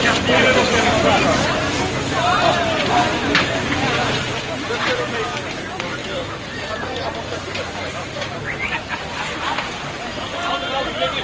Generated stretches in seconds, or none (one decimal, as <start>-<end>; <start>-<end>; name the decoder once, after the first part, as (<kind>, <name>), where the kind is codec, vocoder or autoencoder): 6.0-8.9 (vocoder, BigVGAN v2)